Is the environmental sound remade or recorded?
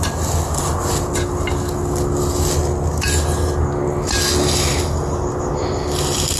recorded